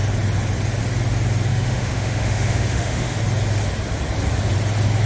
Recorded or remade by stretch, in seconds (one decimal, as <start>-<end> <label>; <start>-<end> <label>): 0.0-1.5 recorded; 1.5-3.2 remade; 3.2-5.1 recorded